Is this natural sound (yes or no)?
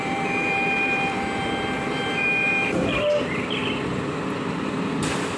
no